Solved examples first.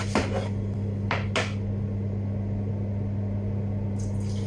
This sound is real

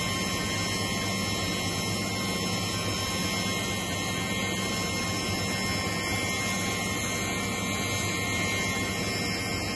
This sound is real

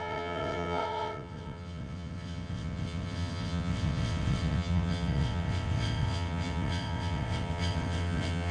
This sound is fake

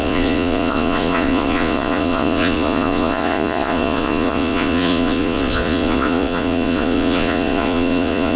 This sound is fake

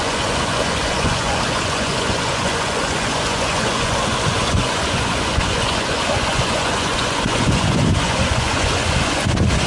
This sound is fake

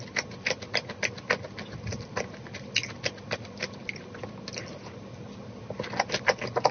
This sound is real